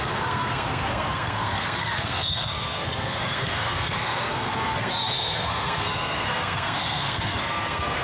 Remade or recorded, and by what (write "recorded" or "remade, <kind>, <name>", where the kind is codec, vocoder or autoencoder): remade, codec, SNAC